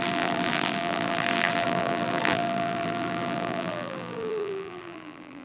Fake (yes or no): yes